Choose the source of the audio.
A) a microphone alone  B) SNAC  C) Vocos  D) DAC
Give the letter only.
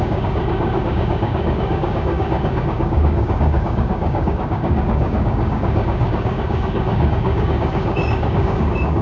D